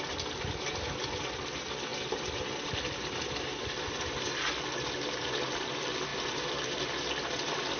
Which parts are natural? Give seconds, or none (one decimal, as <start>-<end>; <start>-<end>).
0.0-7.8